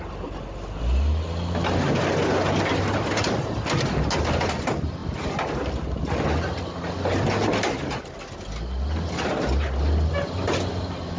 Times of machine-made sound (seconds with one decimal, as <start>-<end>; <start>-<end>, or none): none